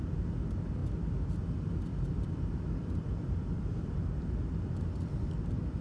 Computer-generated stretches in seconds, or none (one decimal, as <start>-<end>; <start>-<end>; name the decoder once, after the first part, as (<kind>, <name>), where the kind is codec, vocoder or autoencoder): 1.9-4.7 (vocoder, BigVGAN v2)